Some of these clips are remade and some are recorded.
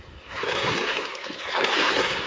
remade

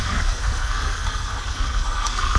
remade